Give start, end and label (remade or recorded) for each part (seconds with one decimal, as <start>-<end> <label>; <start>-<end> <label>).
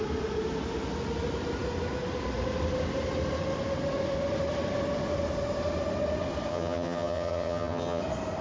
0.0-6.5 recorded; 6.5-8.0 remade; 8.0-8.4 recorded